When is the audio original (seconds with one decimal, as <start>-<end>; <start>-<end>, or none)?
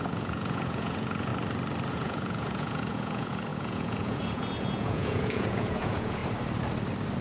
1.3-1.9; 6.2-7.2